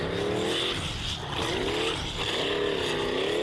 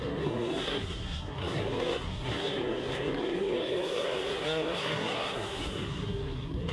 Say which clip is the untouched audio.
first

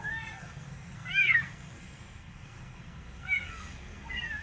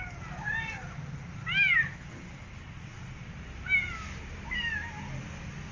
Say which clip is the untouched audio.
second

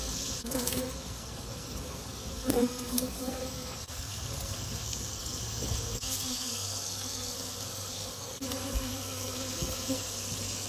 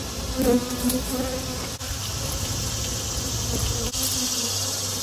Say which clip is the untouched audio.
second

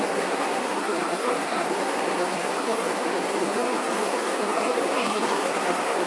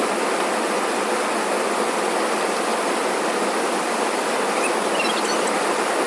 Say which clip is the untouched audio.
second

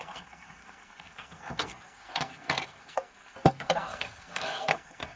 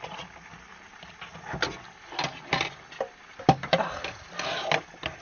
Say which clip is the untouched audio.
second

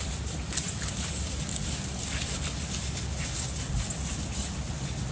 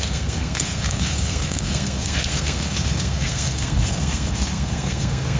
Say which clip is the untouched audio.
first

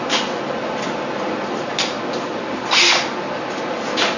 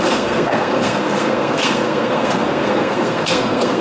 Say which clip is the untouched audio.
first